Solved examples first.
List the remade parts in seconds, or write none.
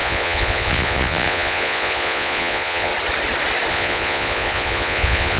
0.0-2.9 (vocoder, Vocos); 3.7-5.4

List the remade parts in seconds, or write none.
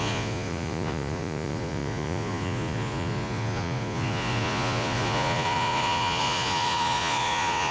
0.0-7.7 (vocoder, Vocos)